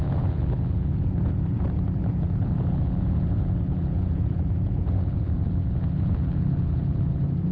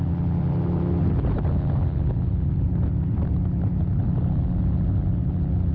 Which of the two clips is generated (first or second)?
first